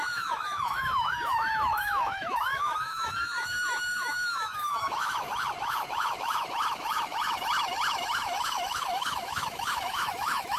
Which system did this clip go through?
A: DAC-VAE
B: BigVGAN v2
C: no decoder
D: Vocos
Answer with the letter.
A